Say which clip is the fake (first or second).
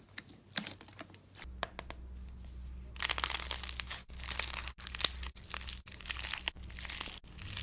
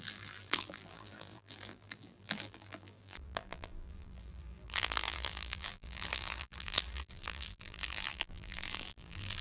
second